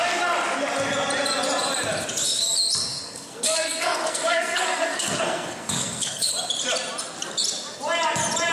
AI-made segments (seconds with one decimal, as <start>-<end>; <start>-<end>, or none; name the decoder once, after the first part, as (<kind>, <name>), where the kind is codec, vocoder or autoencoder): 2.9-6.3 (codec, SNAC)